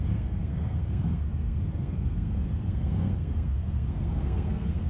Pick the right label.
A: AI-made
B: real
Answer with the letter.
A